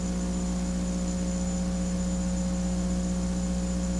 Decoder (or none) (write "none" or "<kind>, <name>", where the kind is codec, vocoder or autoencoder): none